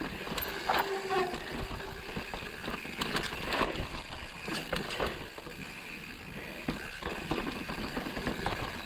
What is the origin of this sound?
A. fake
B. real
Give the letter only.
B